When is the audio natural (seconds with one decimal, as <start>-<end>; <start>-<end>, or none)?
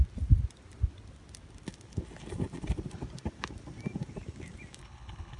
0.0-4.8